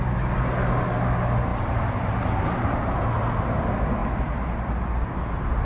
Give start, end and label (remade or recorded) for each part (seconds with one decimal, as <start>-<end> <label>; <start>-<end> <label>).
0.0-5.7 recorded